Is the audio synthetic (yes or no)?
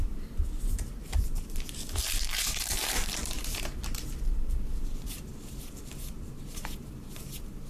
yes